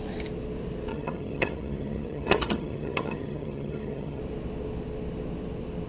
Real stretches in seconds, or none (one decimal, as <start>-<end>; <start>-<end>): 0.0-0.9; 4.2-5.9

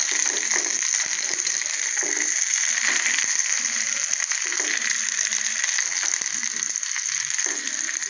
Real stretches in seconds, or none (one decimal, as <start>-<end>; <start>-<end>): 0.0-1.1; 4.1-8.1

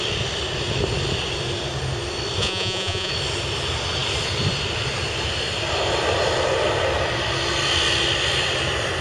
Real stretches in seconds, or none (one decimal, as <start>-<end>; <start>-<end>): 0.0-2.4; 3.1-9.0

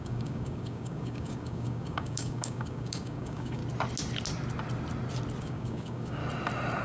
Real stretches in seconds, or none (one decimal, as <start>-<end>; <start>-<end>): 3.6-5.4; 6.2-6.8

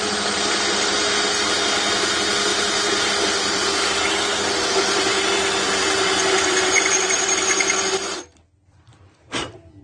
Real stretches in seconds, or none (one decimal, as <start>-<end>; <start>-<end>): 0.0-4.3

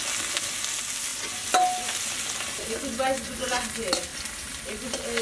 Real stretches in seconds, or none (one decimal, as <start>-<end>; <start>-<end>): 0.0-5.2